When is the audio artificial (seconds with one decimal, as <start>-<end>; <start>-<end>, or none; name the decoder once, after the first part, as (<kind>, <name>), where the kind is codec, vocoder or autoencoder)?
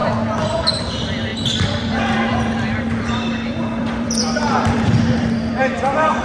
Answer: 0.8-6.2 (vocoder, BigVGAN v2)